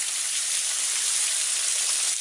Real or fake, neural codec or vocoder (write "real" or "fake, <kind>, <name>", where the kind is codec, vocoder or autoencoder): real